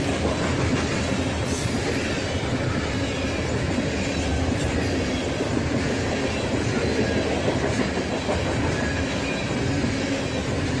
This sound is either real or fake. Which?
real